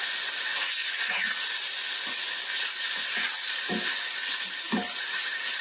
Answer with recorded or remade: recorded